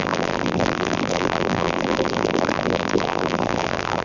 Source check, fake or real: fake